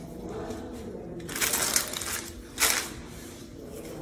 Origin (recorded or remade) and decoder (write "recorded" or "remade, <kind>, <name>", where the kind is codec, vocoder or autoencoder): recorded